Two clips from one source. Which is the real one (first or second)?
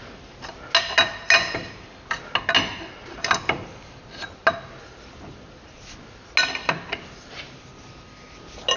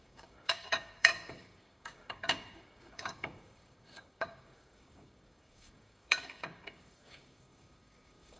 first